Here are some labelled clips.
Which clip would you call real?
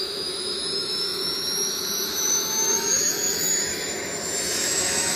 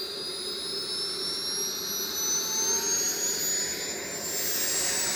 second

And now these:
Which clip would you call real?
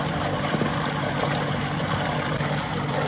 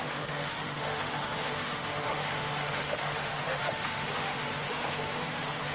first